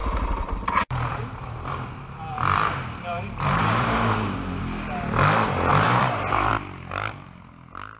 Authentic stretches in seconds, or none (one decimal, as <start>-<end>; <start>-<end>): 1.9-3.1; 4.6-5.7; 6.5-8.0